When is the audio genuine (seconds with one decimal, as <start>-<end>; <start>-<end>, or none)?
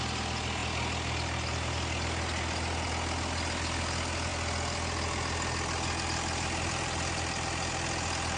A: 0.0-8.4